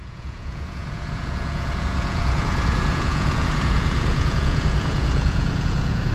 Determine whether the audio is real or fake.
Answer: fake